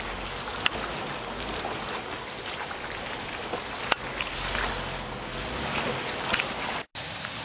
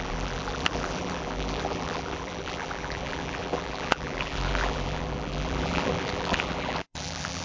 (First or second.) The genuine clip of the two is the first